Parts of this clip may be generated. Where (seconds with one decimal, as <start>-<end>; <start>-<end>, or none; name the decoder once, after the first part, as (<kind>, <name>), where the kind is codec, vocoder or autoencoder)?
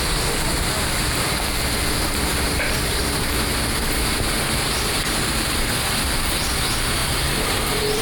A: 7.0-8.0 (vocoder, BigVGAN v2)